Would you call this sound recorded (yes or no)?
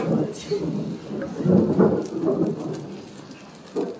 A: yes